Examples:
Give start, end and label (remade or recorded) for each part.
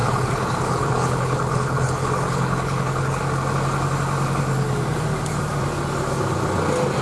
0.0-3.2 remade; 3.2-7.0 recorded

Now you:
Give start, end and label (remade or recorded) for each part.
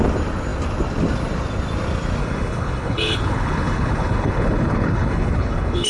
0.0-2.2 recorded; 2.2-5.9 remade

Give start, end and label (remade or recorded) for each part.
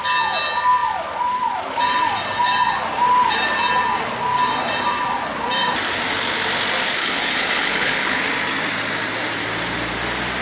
0.0-7.0 recorded; 7.0-8.2 remade; 8.2-10.4 recorded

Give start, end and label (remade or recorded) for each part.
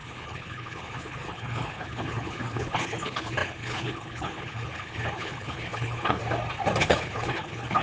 0.0-6.2 remade; 6.2-6.8 recorded; 6.8-7.8 remade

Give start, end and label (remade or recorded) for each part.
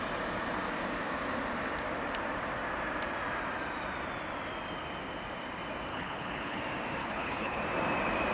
0.0-5.9 recorded; 5.9-6.6 remade; 6.6-7.0 recorded; 7.0-7.6 remade; 7.6-8.3 recorded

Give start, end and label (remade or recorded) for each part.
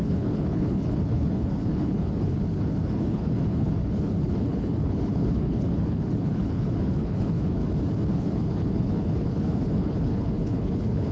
0.0-7.6 remade; 7.6-8.1 recorded; 8.1-11.1 remade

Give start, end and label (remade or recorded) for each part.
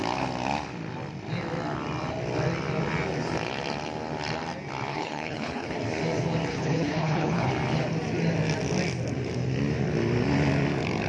0.0-4.9 recorded; 4.9-5.8 remade; 5.8-6.5 recorded; 6.5-7.5 remade; 7.5-11.1 recorded